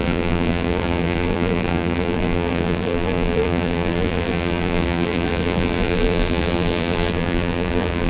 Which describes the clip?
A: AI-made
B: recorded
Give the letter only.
A